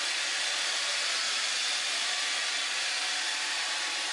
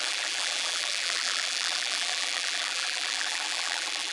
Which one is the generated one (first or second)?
second